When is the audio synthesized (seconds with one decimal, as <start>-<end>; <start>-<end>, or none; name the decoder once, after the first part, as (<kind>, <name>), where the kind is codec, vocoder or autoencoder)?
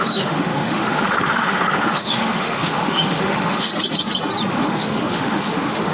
0.0-3.7 (autoencoder, DAC-VAE); 4.5-5.9